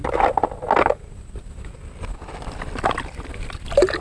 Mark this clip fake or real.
real